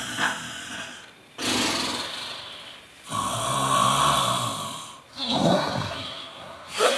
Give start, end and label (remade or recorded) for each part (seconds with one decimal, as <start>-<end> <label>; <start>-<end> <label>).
0.0-5.1 recorded; 5.1-7.0 remade